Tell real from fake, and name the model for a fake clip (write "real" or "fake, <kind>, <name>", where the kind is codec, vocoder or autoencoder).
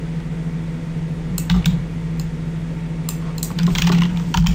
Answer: real